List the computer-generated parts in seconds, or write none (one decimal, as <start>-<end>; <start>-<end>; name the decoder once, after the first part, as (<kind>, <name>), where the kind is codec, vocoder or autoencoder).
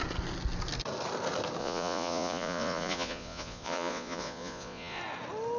1.6-5.0 (vocoder, Vocos)